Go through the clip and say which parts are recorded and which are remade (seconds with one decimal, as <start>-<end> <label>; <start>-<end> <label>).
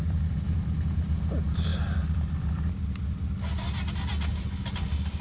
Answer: 0.0-5.2 recorded